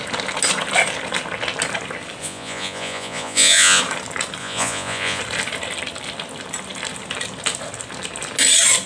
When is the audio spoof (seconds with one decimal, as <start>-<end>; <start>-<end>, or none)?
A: 2.2-3.8; 4.4-5.2

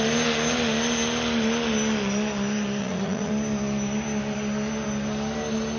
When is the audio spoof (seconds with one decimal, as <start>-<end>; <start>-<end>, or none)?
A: 2.8-3.3

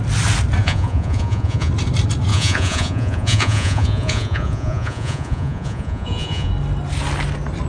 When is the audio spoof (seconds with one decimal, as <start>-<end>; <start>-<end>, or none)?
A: 0.6-1.7; 2.3-6.5

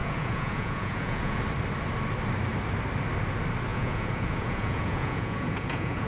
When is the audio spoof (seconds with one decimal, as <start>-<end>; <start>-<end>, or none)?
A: 0.0-1.4; 3.7-6.1

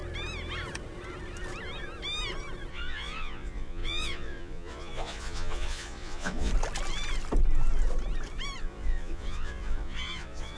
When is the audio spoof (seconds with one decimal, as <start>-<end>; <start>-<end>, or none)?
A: 2.7-6.5; 8.6-10.6